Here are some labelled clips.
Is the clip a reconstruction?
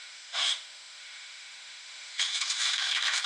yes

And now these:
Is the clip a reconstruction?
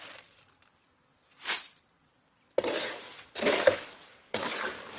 yes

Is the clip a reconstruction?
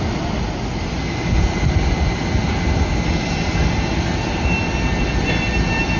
no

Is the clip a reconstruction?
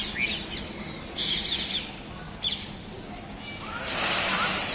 no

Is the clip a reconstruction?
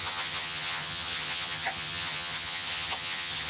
yes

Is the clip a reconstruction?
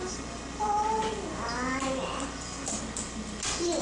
no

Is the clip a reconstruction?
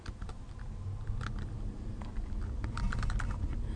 no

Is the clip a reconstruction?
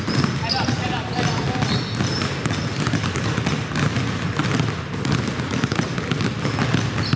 no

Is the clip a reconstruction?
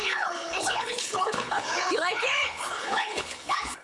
yes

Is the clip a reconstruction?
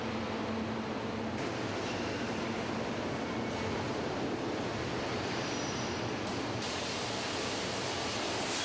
no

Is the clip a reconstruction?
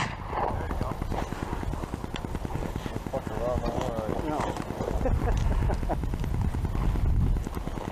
no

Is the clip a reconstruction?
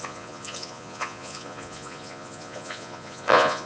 yes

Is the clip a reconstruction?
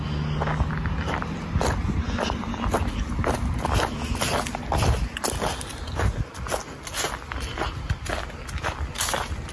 no